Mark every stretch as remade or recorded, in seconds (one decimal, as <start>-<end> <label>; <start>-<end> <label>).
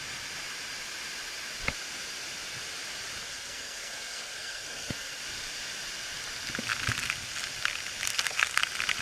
0.0-3.2 recorded; 3.2-5.2 remade; 5.2-8.1 recorded; 8.1-8.6 remade; 8.6-9.0 recorded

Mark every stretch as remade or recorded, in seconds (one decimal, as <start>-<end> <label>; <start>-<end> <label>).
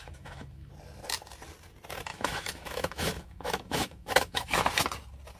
0.0-0.7 remade; 0.7-2.1 recorded; 2.1-4.7 remade; 4.7-5.4 recorded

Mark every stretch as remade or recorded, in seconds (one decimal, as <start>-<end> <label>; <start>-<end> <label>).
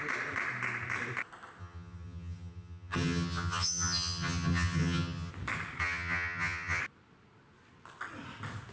0.0-1.6 recorded; 1.6-5.3 remade; 5.3-5.8 recorded; 5.8-6.8 remade; 6.8-8.7 recorded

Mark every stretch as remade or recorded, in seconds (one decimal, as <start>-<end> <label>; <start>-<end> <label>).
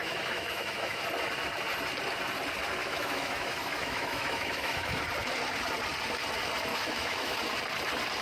0.0-1.0 remade; 1.0-2.8 recorded; 2.8-5.0 remade; 5.0-6.7 recorded; 6.7-7.4 remade; 7.4-8.2 recorded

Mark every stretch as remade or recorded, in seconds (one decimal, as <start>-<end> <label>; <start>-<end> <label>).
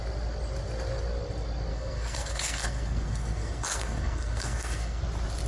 0.0-1.7 recorded; 1.7-5.0 remade; 5.0-5.5 recorded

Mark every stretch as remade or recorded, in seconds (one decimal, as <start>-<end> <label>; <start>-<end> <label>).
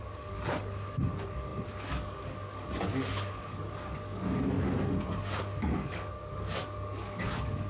0.0-7.7 remade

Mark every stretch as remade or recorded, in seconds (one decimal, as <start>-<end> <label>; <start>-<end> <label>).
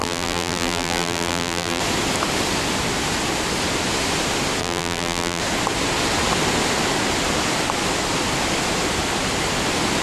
0.0-1.8 remade; 1.8-4.6 recorded; 4.6-5.4 remade; 5.4-10.0 recorded